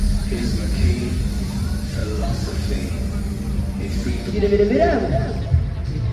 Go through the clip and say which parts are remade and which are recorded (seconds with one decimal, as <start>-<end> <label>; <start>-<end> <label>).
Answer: 0.0-6.1 recorded